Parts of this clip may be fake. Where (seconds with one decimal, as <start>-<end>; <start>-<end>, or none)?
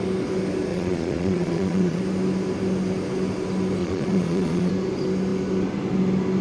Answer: 0.7-2.0; 3.8-4.7